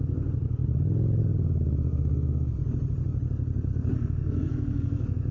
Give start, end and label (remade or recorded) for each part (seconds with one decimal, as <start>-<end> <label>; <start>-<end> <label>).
0.0-1.9 recorded; 1.9-2.5 remade; 2.5-3.7 recorded; 3.7-5.3 remade